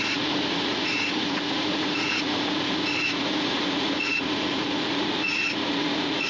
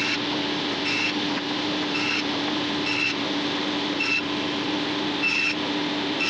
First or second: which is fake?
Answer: first